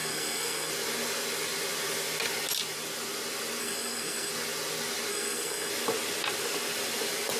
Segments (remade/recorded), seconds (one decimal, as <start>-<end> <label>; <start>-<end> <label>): 0.0-0.7 remade; 0.7-3.6 recorded; 3.6-4.3 remade; 4.3-5.1 recorded; 5.1-5.7 remade; 5.7-7.4 recorded